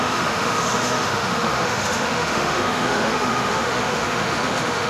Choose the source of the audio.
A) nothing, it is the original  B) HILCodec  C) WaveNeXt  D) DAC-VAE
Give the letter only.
D